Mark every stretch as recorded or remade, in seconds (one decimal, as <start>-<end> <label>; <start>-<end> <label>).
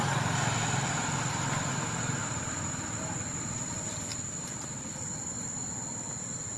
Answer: 0.0-6.6 recorded